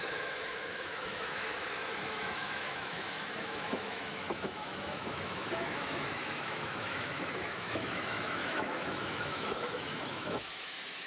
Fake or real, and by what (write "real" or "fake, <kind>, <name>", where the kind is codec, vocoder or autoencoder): fake, autoencoder, DAC-VAE